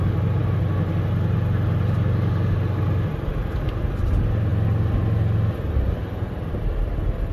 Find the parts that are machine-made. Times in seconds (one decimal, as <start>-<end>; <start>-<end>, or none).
none